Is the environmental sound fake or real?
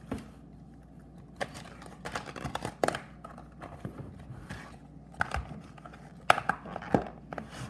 real